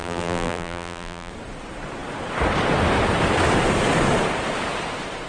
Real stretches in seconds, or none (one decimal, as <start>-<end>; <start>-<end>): 1.3-5.3